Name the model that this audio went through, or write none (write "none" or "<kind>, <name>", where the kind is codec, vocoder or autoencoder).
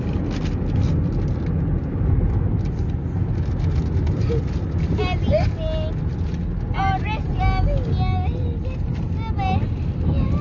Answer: none